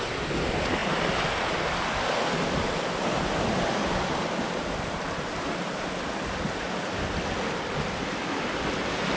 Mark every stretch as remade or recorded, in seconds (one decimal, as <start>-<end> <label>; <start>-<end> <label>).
0.0-9.2 recorded